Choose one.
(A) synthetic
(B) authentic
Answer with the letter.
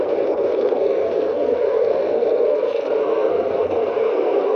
A